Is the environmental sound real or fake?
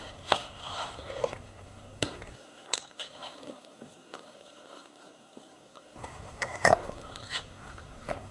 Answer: fake